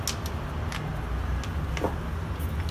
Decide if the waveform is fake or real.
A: real